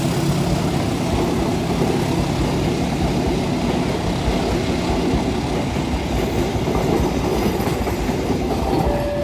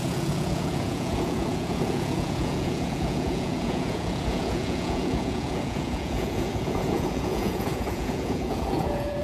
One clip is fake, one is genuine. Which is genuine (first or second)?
first